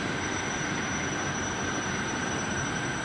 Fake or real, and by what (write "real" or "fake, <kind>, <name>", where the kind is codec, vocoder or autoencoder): fake, vocoder, BigVGAN v2